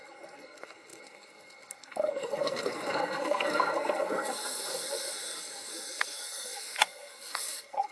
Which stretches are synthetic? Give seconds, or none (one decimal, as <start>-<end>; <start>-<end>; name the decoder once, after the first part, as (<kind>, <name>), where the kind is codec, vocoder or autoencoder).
0.0-7.9 (codec, SNAC)